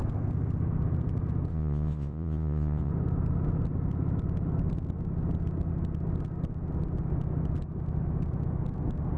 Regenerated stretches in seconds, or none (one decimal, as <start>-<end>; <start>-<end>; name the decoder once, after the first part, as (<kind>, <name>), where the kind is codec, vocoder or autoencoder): 1.5-2.9 (vocoder, Vocos)